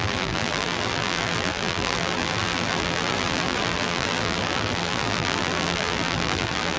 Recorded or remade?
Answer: remade